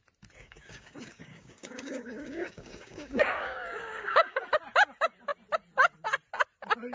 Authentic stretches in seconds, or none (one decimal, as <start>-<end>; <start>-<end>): 0.0-0.4; 4.4-6.9